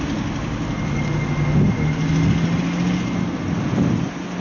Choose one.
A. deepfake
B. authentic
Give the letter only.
B